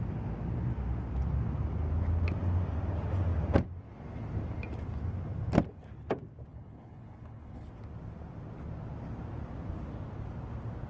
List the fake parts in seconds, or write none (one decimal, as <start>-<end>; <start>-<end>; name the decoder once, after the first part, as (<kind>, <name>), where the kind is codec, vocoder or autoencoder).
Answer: 6.5-7.7 (codec, HILCodec)